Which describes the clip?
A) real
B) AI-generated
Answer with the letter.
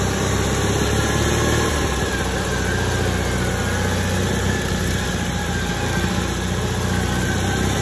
A